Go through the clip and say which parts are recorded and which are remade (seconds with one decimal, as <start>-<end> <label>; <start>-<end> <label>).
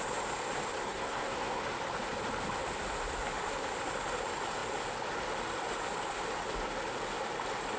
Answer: 0.0-0.8 recorded; 0.8-1.6 remade; 1.6-7.8 recorded